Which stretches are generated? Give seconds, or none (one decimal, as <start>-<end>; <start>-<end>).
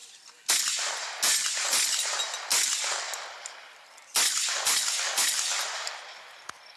5.5-6.0